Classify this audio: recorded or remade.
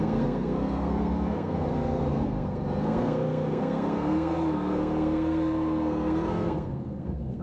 remade